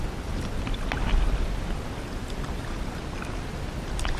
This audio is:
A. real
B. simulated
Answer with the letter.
A